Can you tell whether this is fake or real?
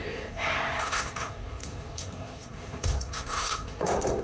fake